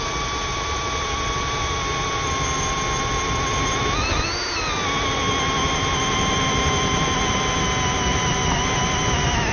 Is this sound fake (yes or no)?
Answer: no